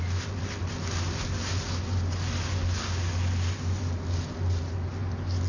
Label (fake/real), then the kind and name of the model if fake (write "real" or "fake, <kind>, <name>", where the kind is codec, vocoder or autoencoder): real